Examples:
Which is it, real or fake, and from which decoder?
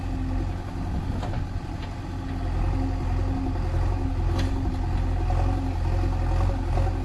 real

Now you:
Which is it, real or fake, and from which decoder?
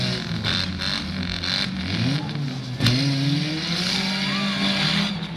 real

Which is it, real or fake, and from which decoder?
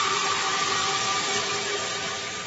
real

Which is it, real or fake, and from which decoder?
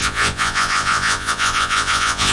fake, vocoder, Vocos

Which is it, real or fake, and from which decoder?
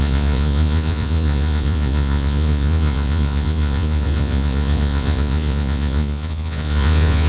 fake, vocoder, Vocos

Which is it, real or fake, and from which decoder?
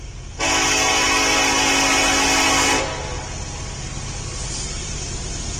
real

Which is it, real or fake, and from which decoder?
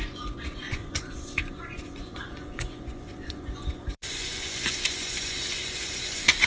fake, vocoder, Vocos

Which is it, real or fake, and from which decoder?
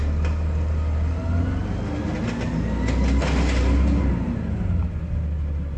real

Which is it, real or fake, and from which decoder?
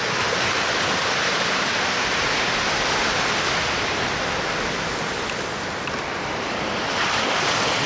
real